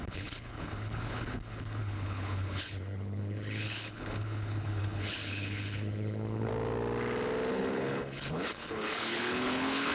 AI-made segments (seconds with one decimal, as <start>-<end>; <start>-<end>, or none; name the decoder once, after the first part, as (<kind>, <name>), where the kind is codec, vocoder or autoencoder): 0.0-6.5 (codec, HILCodec); 7.5-9.9